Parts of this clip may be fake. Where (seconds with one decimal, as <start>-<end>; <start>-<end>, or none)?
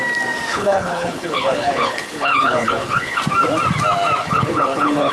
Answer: 0.5-3.2; 4.2-5.1